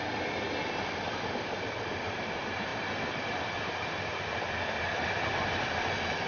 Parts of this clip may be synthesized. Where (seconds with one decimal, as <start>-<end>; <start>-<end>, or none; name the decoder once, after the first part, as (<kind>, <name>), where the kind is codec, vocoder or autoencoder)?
none